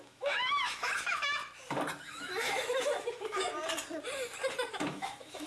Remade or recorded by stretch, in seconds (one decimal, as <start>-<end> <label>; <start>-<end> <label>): 0.0-1.4 remade; 1.4-2.0 recorded; 2.0-3.5 remade; 3.5-4.7 recorded; 4.7-5.5 remade